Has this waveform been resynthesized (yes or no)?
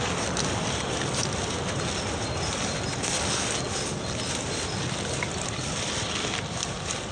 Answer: no